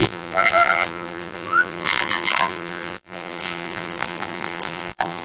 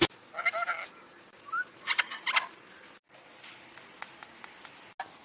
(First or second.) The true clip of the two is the second